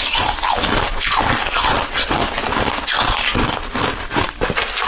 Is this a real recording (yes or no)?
yes